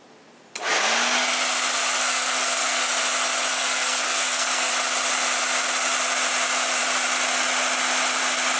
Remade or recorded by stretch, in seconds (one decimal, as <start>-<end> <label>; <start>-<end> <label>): 0.0-2.0 recorded; 2.0-2.8 remade; 2.8-3.5 recorded; 3.5-4.7 remade; 4.7-8.6 recorded